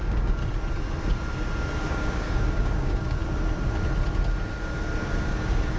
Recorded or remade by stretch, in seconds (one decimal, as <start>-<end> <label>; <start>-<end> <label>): 0.0-0.4 remade; 0.4-1.9 recorded; 1.9-3.2 remade; 3.2-5.2 recorded; 5.2-5.8 remade